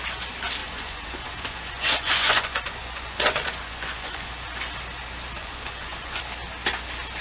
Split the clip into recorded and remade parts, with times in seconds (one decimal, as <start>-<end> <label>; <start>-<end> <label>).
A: 0.0-0.6 recorded; 0.6-4.3 remade; 4.3-5.4 recorded; 5.4-6.2 remade; 6.2-7.2 recorded